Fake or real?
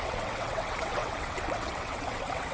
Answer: fake